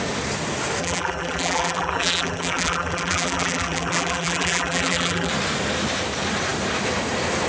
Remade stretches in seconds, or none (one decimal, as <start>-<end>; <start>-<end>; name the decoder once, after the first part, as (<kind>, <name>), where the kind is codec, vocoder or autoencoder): 0.8-5.3 (vocoder, BigVGAN v2)